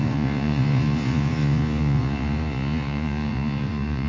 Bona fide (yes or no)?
no